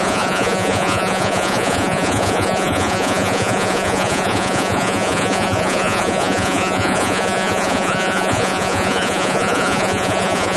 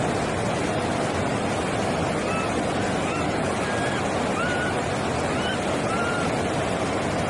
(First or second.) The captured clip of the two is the second